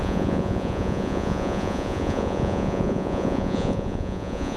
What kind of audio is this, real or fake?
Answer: fake